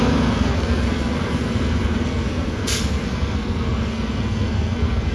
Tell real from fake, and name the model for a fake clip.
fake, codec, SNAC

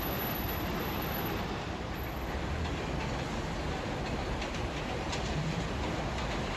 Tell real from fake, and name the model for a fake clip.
real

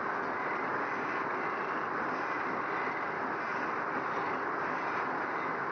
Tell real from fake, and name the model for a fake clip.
real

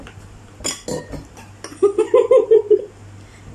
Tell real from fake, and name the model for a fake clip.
real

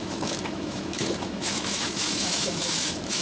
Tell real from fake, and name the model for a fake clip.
fake, autoencoder, DAC-VAE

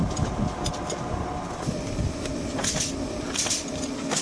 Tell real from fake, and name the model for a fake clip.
real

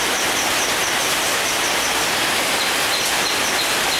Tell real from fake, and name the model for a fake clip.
real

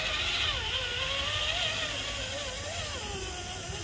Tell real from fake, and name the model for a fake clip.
real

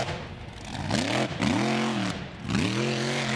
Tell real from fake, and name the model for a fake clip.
real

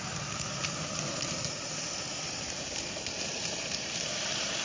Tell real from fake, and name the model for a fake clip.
fake, vocoder, BigVGAN v2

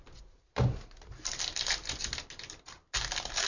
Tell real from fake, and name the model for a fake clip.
real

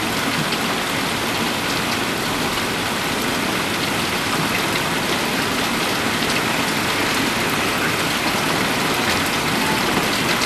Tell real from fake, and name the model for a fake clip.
real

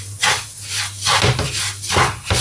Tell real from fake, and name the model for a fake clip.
real